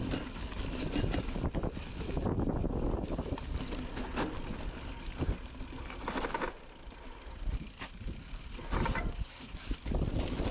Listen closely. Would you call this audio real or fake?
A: real